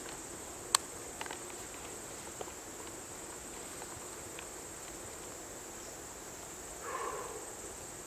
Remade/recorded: recorded